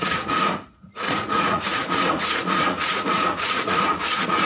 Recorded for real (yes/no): no